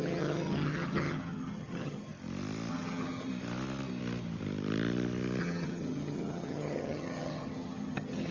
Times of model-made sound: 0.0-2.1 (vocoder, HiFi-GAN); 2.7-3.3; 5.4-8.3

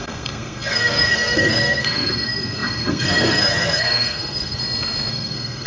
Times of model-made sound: 0.0-4.6 (codec, SNAC); 5.1-5.7

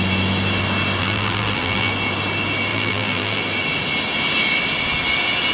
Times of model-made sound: 1.0-1.9 (vocoder, BigVGAN v2); 2.7-3.4

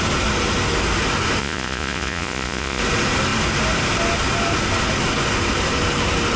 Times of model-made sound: 1.4-2.8 (vocoder, Vocos)

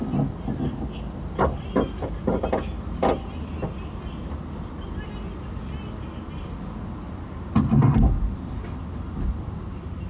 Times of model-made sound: none

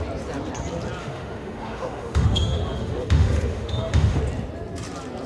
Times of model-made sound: 1.0-4.2 (autoencoder, DAC-VAE)

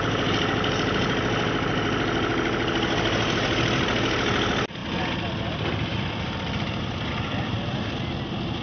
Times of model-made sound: none